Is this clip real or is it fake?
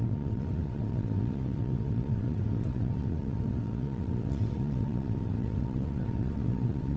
fake